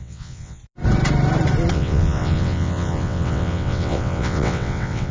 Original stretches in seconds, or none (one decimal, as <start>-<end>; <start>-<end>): 0.6-1.7